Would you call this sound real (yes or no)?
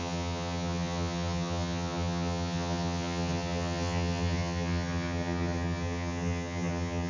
no